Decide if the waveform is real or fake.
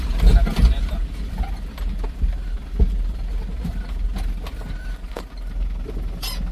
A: real